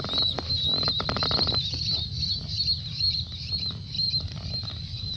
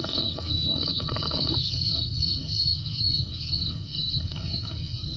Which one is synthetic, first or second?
second